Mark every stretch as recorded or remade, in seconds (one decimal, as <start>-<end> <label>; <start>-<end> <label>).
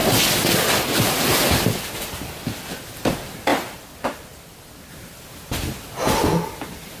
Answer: 0.0-7.0 recorded